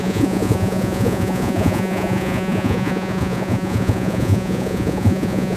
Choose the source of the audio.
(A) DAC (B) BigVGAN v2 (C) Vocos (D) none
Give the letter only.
C